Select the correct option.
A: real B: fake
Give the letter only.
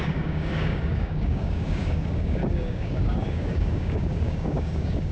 B